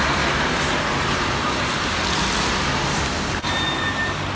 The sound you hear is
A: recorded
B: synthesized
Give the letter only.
A